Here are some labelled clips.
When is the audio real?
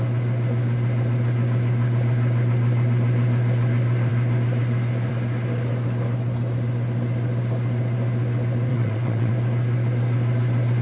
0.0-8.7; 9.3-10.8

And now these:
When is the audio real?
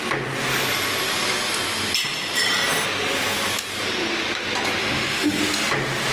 0.0-4.8; 5.4-6.1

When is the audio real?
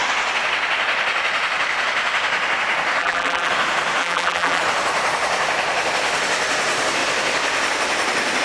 0.0-3.0; 3.5-4.0; 4.6-8.4